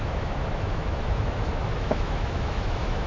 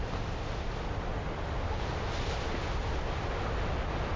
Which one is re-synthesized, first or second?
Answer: first